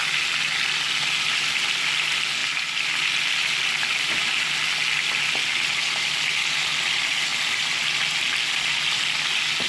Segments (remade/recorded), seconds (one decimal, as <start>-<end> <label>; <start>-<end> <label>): 0.0-9.7 recorded